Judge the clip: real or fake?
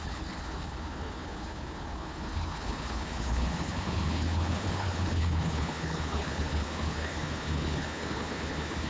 fake